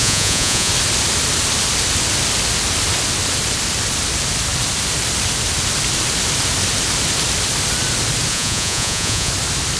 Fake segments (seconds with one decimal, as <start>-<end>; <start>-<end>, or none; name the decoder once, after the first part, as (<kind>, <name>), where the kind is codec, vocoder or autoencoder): 0.0-0.7 (vocoder, Vocos); 8.3-9.3